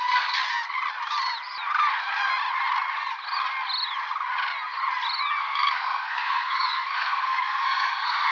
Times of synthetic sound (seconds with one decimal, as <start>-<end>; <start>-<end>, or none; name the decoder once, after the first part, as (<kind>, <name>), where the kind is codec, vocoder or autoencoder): 0.0-0.4 (codec, SNAC); 5.4-8.3